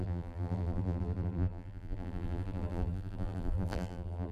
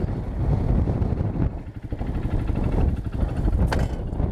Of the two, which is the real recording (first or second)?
second